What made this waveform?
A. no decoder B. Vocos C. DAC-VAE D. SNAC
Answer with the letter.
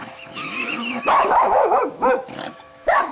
C